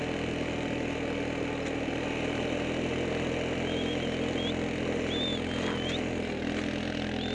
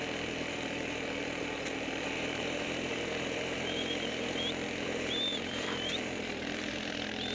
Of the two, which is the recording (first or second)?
first